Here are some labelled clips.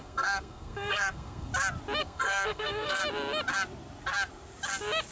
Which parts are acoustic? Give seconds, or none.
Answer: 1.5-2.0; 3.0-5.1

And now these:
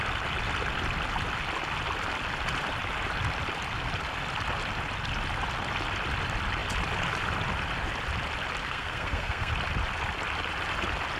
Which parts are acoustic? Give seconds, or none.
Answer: 0.0-8.6; 9.5-11.2

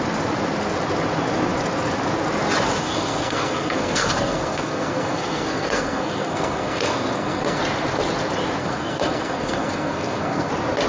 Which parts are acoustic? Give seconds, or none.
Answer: 0.0-2.8; 7.6-8.6; 10.5-10.9

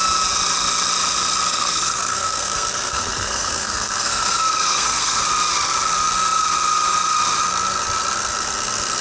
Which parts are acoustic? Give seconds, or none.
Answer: 0.0-1.5; 5.2-9.0

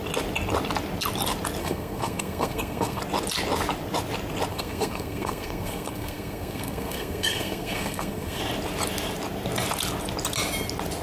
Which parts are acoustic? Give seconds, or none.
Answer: 0.0-1.6; 3.0-4.5; 8.4-11.0

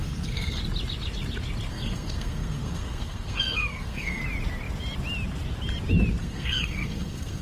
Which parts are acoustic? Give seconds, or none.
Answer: 0.6-1.7; 4.2-6.2

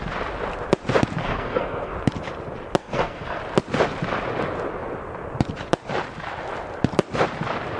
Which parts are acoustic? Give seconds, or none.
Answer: 0.0-1.2; 1.9-2.8; 3.4-7.8